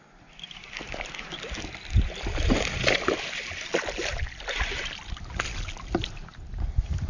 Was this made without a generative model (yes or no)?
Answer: yes